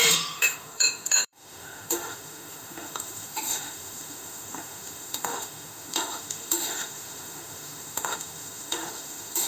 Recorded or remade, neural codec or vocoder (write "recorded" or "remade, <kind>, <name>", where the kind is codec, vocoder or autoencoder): remade, autoencoder, DAC-VAE